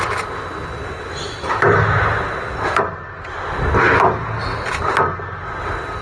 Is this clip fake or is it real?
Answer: real